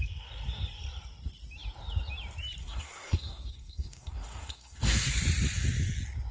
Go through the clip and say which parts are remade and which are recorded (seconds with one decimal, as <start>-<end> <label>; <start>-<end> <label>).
0.0-2.6 recorded; 2.6-5.1 remade; 5.1-6.3 recorded